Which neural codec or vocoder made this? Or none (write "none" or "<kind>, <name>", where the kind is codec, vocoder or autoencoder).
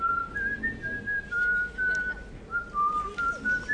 none